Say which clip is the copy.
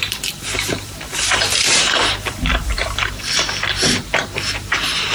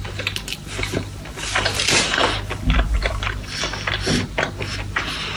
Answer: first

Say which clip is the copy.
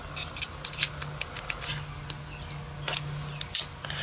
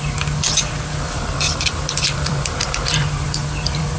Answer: second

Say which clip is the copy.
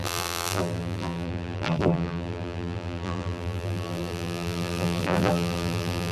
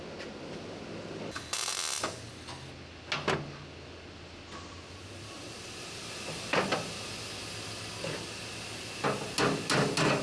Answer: first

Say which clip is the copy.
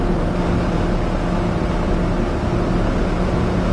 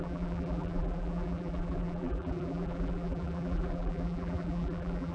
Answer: second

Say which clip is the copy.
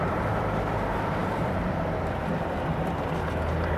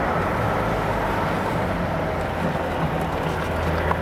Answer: first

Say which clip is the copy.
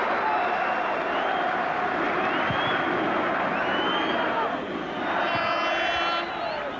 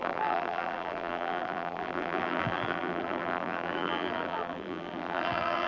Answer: second